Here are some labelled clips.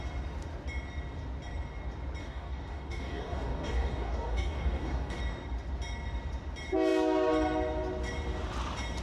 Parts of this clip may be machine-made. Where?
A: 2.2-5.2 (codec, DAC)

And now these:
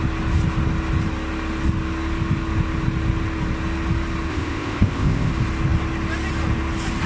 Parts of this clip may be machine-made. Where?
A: 4.3-5.3 (codec, ZipCodec)

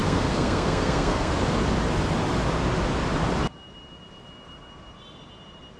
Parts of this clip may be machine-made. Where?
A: 0.0-1.3 (codec, SNAC)

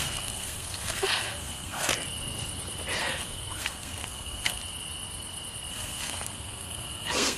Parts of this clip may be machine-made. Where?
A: 0.0-1.9 (codec, SNAC); 3.0-4.6; 5.7-7.4

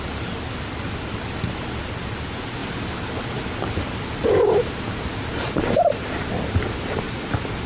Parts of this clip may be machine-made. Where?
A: none